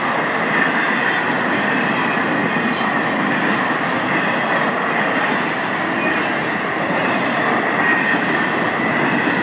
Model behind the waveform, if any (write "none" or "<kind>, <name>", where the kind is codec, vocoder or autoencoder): none